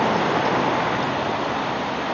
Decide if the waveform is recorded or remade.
recorded